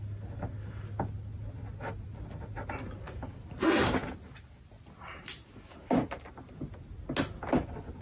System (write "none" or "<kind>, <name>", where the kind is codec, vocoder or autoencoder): none